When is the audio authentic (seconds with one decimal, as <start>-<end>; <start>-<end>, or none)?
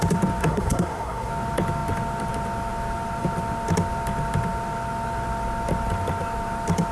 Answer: 0.0-0.4; 1.3-6.9